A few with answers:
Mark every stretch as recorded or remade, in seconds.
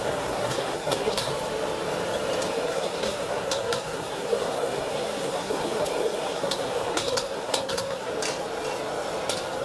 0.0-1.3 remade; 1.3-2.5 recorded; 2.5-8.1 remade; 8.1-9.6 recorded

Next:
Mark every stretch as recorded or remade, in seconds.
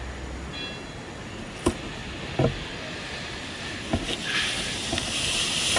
0.0-5.8 recorded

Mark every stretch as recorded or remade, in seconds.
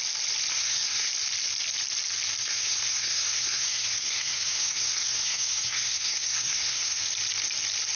0.0-0.5 recorded; 0.5-1.1 remade; 1.1-2.4 recorded; 2.4-7.0 remade; 7.0-8.0 recorded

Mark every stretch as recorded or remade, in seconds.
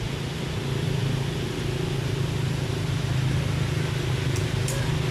0.0-5.1 recorded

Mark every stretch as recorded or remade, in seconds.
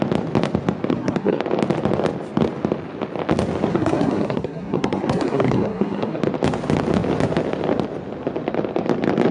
0.0-0.9 recorded; 0.9-1.4 remade; 1.4-3.7 recorded; 3.7-6.2 remade; 6.2-9.3 recorded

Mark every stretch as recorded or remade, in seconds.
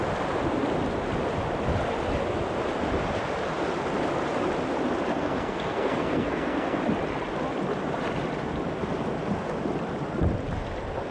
0.0-5.1 recorded; 5.1-6.8 remade; 6.8-11.1 recorded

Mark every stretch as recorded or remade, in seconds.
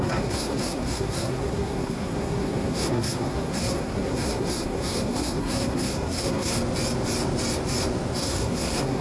0.0-6.6 remade; 6.6-8.2 recorded; 8.2-9.0 remade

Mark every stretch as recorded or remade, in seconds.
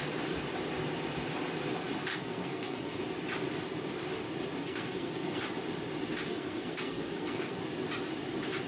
0.0-2.1 recorded; 2.1-3.0 remade; 3.0-4.6 recorded; 4.6-5.4 remade; 5.4-6.3 recorded; 6.3-7.6 remade; 7.6-8.7 recorded